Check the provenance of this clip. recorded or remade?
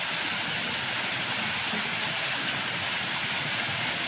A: recorded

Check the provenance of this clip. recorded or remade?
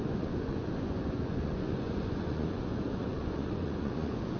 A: remade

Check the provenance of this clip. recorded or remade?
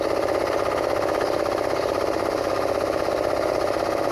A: recorded